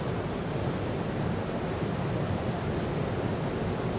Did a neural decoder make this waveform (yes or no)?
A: no